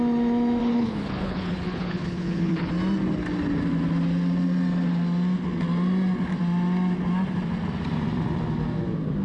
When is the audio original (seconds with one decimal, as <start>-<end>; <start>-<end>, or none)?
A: 0.0-0.6; 2.7-9.2